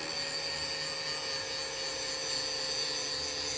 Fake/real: real